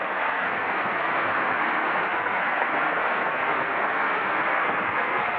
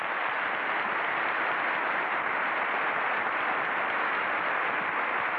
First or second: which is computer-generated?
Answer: first